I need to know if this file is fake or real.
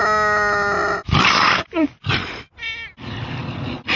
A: real